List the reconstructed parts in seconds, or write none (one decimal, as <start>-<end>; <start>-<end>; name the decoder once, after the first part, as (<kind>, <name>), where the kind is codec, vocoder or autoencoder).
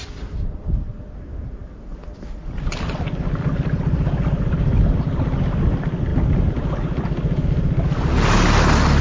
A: none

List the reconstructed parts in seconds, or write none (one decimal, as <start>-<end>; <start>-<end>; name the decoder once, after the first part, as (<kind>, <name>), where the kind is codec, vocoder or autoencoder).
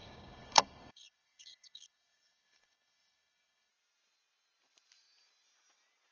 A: 0.0-3.7 (codec, DAC)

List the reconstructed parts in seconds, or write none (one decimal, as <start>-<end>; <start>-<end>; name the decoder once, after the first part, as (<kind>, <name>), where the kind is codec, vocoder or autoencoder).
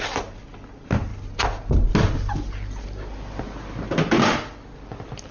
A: none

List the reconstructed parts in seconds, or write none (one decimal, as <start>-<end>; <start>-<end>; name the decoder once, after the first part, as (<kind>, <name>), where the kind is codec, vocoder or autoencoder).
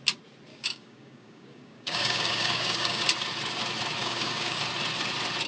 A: 0.5-3.0 (codec, DAC); 4.0-4.6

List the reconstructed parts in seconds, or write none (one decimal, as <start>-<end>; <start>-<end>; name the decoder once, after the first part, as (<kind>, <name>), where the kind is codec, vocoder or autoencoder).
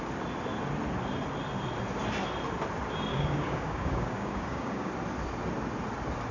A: 3.1-4.9 (codec, DAC)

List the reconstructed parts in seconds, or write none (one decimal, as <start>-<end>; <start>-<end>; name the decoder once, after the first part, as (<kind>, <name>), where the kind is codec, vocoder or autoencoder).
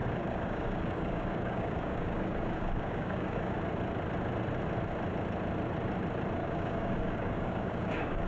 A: 0.0-3.6 (codec, DAC); 6.4-8.3